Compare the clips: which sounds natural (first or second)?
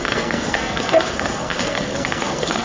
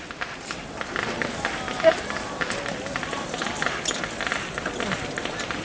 second